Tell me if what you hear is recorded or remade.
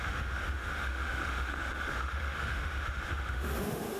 remade